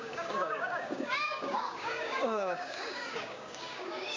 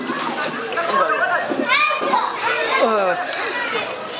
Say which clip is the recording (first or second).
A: second